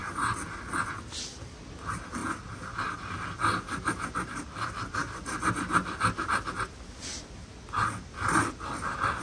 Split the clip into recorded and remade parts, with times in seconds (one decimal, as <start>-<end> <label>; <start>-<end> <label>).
0.0-9.2 recorded